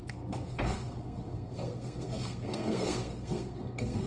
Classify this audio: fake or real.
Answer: fake